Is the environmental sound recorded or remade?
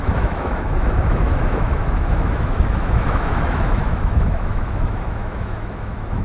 remade